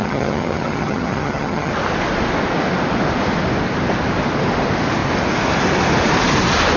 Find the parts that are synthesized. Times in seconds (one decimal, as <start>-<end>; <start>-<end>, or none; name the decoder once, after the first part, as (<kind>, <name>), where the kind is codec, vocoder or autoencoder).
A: 0.0-1.7 (vocoder, HiFi-GAN)